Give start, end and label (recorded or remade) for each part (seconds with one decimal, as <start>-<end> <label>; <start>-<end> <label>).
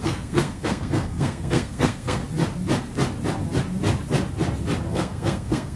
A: 0.0-2.2 remade; 2.2-4.9 recorded; 4.9-5.8 remade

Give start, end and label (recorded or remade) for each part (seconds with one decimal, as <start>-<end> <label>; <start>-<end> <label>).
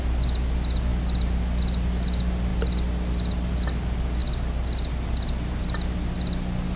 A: 0.0-6.8 recorded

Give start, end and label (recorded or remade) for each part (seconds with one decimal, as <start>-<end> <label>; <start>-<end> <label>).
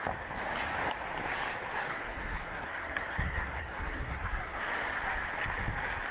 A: 0.0-1.9 recorded; 1.9-4.6 remade; 4.6-6.1 recorded